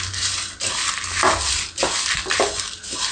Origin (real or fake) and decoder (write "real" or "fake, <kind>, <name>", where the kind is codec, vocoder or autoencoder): real